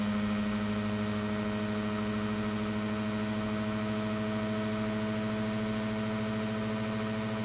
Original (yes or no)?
yes